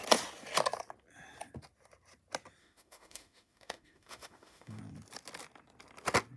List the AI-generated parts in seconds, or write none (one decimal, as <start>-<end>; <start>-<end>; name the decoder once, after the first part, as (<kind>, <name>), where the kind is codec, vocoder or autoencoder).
2.6-4.8 (autoencoder, DAC-VAE)